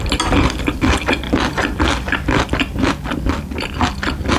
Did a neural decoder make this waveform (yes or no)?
no